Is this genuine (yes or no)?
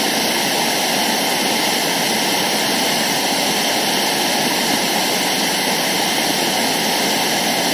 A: yes